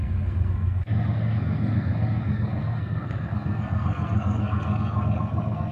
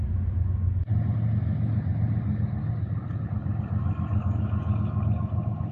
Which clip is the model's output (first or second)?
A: first